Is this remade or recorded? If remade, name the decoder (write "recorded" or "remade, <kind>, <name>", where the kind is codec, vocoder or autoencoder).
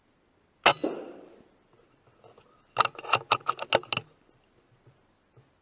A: recorded